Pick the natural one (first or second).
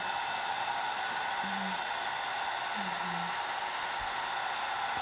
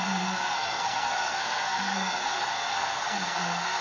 first